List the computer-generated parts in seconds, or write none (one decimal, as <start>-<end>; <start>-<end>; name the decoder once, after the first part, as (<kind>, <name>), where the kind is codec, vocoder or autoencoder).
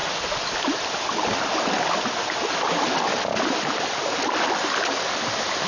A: none